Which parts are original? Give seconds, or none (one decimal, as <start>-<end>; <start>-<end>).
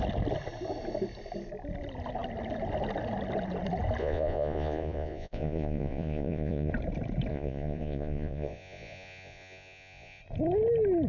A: 0.0-4.0; 6.7-7.3; 10.2-11.1